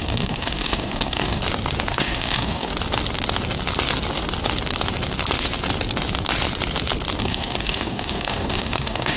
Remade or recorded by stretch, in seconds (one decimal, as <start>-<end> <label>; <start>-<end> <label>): 0.0-1.4 remade; 1.4-1.9 recorded; 1.9-2.7 remade; 2.7-7.2 recorded; 7.2-9.2 remade